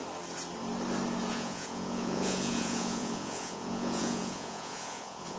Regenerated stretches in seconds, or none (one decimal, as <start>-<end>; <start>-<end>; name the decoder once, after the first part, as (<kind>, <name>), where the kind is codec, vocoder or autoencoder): 1.3-5.4 (vocoder, Vocos)

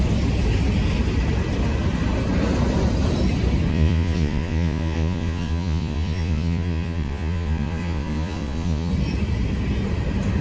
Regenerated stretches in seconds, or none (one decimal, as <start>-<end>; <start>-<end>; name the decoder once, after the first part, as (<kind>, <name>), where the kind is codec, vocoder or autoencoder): 3.7-8.9 (vocoder, Vocos)